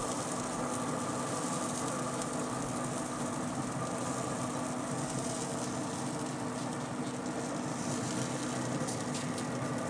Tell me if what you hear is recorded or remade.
recorded